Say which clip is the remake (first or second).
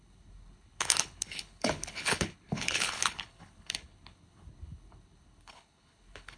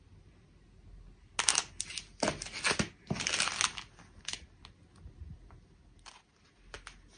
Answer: first